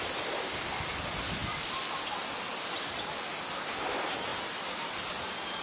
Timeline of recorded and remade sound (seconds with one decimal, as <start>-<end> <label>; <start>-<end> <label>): 0.0-5.6 recorded